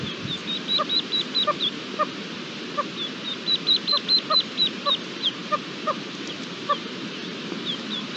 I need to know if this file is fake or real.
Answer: fake